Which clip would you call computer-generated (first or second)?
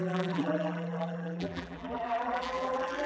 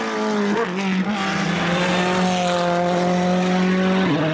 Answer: first